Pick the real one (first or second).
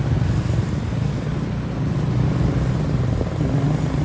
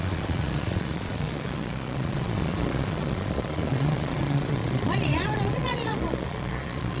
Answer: first